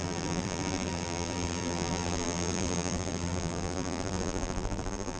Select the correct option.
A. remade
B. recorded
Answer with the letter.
A